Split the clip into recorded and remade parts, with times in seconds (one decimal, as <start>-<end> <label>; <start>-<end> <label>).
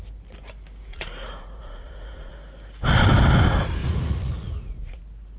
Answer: 0.0-0.9 recorded; 0.9-2.3 remade; 2.3-3.8 recorded; 3.8-5.0 remade; 5.0-5.4 recorded